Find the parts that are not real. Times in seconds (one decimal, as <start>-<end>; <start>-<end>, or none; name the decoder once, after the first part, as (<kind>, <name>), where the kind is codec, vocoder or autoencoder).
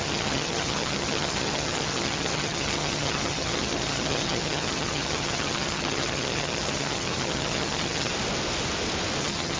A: 0.0-8.1 (vocoder, HiFi-GAN); 9.2-9.6